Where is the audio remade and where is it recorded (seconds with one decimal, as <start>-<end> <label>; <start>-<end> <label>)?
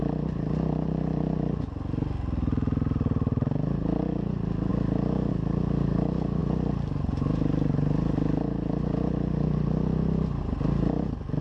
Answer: 0.0-11.4 recorded